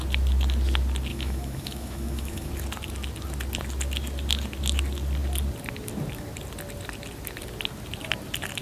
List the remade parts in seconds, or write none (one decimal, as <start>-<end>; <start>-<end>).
1.1-2.5